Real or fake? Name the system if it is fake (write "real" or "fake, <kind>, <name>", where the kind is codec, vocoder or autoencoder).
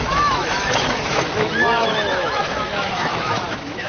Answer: fake, autoencoder, DAC-VAE